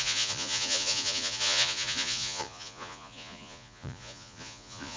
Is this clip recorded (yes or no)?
no